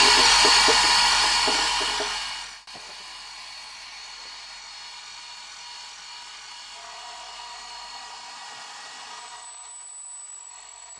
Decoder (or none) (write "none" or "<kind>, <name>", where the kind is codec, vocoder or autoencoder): none